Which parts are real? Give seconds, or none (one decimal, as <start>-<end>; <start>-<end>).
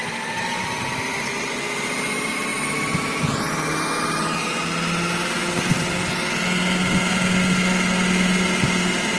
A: 0.0-9.2